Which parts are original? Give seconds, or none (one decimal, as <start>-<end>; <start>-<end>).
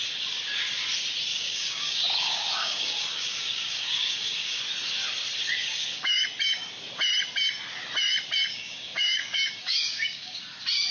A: 0.0-1.3; 4.6-5.6; 6.2-8.5; 10.4-10.9